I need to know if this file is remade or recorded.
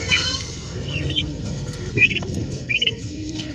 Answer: remade